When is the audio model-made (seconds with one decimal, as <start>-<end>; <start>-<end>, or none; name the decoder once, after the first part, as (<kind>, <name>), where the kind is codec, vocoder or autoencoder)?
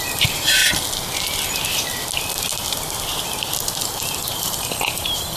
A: 0.0-0.6 (vocoder, BigVGAN v2); 3.8-5.4